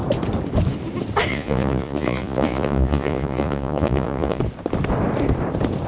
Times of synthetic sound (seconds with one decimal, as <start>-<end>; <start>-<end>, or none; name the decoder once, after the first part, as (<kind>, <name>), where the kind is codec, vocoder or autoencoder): 1.3-4.4 (vocoder, Vocos)